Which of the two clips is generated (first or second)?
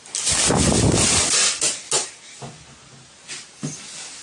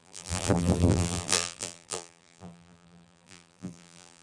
second